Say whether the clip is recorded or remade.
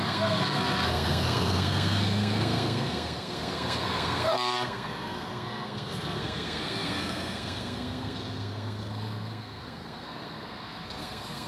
remade